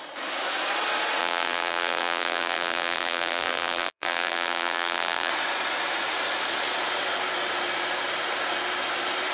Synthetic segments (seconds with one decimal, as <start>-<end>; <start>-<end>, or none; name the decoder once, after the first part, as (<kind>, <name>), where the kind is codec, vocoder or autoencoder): 1.2-5.3 (vocoder, BigVGAN v2)